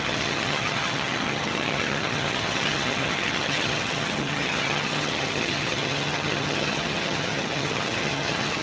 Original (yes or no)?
no